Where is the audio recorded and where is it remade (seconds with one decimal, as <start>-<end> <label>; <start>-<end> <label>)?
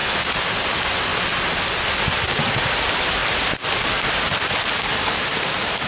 0.0-0.7 recorded; 0.7-1.1 remade; 1.1-2.1 recorded; 2.1-5.9 remade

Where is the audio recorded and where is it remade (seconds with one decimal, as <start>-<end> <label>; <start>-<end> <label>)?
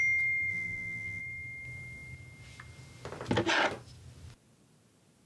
0.0-0.5 recorded; 0.5-1.2 remade; 1.2-5.3 recorded